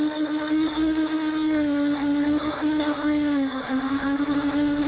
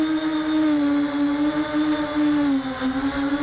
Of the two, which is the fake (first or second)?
first